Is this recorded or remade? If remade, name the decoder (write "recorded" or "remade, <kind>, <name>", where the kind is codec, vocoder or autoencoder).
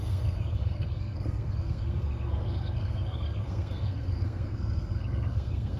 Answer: remade, codec, SNAC